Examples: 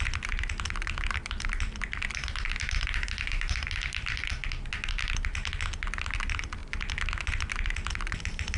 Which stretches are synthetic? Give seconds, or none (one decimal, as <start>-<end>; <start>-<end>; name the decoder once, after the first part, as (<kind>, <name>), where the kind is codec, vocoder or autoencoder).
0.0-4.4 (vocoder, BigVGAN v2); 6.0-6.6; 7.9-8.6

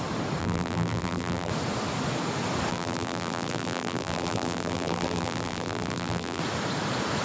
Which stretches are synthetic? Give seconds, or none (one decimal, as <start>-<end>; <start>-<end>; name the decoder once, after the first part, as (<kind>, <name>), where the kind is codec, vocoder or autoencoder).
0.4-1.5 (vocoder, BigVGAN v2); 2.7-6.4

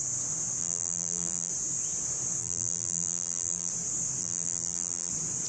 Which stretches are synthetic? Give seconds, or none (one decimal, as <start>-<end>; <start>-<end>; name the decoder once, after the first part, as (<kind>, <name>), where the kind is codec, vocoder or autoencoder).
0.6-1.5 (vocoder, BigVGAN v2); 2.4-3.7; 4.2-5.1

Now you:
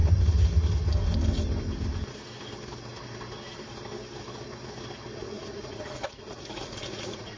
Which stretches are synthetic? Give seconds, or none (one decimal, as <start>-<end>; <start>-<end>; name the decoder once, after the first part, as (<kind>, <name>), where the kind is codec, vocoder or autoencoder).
5.2-7.4 (vocoder, Vocos)